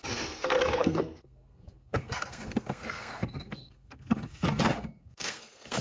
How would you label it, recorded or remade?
remade